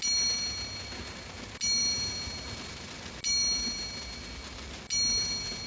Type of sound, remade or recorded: recorded